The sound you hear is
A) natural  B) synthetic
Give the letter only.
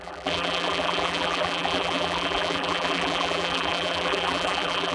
B